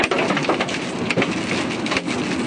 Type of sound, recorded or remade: recorded